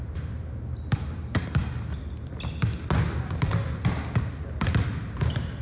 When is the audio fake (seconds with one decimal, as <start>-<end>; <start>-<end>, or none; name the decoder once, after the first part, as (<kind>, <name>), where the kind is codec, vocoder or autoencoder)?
0.0-1.6 (vocoder, BigVGAN v2); 5.0-5.6